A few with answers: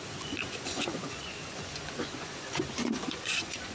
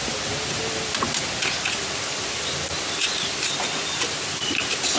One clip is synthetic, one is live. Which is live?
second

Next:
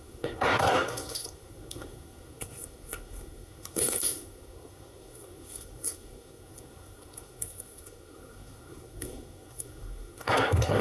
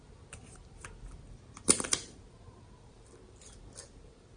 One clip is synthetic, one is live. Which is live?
second